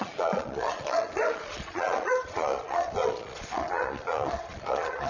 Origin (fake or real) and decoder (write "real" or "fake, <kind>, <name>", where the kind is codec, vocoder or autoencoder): fake, vocoder, Vocos